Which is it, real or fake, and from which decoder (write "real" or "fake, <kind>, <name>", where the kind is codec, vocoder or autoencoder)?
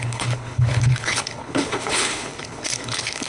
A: fake, codec, HILCodec